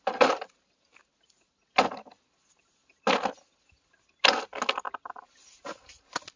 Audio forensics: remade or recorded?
recorded